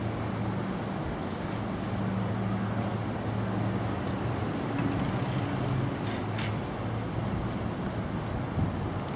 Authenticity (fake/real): real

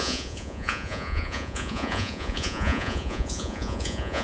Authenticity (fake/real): fake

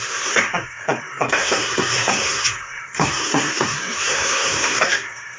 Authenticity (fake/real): fake